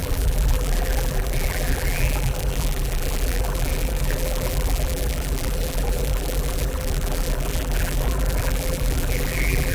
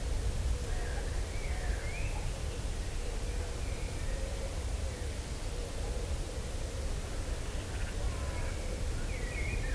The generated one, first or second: first